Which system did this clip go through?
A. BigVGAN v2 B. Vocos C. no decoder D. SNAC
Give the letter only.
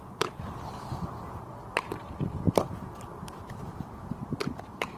A